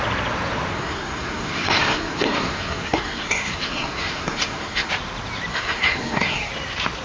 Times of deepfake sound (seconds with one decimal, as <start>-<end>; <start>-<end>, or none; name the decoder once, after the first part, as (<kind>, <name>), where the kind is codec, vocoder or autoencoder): 0.7-4.9 (codec, SNAC); 5.5-6.5